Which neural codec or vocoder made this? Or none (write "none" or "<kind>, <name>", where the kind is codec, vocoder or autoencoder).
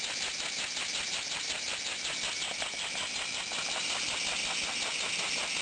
none